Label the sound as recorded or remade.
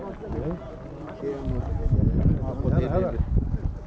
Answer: recorded